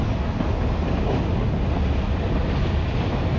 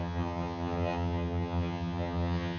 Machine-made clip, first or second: second